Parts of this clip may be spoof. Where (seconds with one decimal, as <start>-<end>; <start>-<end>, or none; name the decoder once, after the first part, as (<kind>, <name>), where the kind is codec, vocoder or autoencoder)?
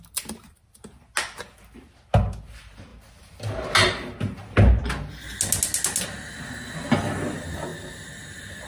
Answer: none